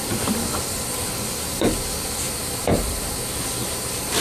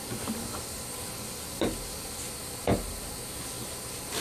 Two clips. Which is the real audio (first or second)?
second